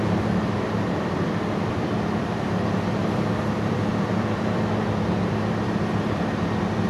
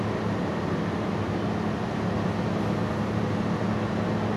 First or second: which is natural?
second